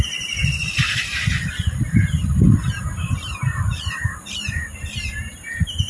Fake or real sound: fake